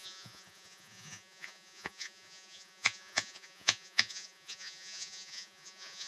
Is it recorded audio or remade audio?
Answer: remade